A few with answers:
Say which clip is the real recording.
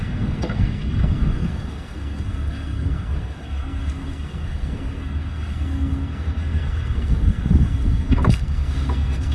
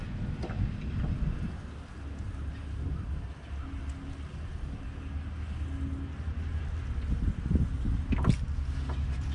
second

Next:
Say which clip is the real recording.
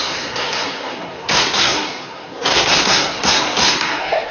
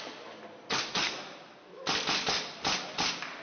second